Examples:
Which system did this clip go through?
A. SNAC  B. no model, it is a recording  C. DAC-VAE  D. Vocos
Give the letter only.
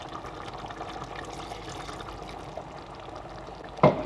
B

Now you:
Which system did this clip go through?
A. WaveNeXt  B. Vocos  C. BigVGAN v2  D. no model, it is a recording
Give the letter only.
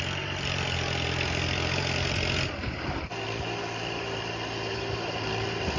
D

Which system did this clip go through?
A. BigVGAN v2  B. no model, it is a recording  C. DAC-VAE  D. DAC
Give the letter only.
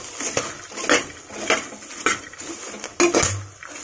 B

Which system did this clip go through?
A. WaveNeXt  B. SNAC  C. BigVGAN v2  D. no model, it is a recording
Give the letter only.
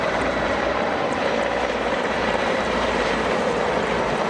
C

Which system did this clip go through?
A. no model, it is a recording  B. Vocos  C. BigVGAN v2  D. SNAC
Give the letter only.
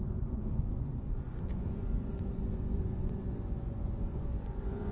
B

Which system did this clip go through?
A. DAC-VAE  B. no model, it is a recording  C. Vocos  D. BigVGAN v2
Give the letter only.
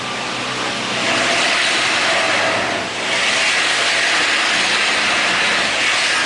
B